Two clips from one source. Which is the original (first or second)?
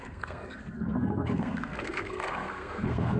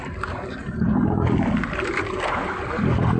second